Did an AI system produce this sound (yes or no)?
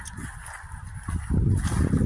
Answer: no